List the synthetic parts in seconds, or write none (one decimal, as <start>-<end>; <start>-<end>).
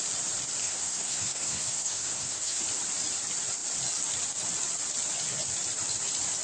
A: 0.6-2.6